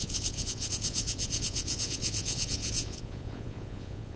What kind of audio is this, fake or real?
fake